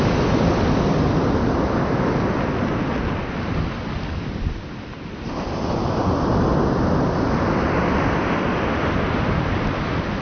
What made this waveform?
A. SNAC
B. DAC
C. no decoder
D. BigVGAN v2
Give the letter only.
C